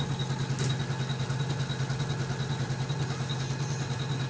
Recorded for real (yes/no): yes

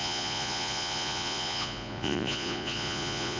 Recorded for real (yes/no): no